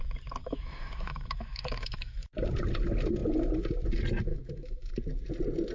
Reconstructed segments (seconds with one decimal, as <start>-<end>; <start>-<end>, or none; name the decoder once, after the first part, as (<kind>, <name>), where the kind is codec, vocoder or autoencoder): 0.4-2.3 (autoencoder, DAC-VAE); 4.3-4.9